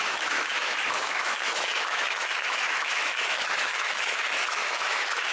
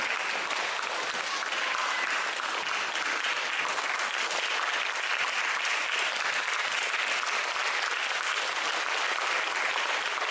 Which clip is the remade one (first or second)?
first